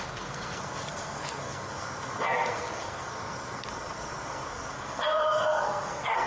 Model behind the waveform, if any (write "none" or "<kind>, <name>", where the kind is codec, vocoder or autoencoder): codec, SNAC